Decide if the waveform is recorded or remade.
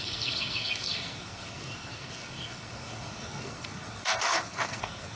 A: remade